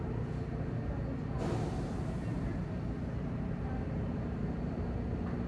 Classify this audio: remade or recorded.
recorded